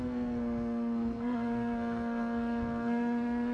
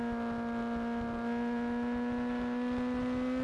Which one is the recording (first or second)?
second